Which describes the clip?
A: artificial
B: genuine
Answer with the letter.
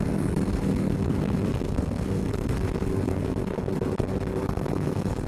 A